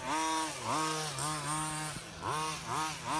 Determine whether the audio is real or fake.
real